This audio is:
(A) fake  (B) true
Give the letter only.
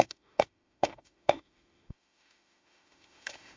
A